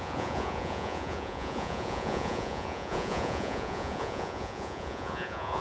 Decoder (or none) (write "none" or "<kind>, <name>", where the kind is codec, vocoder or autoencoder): vocoder, Vocos